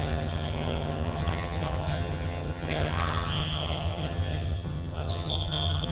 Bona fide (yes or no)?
no